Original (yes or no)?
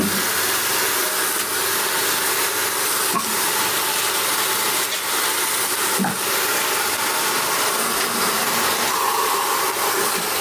yes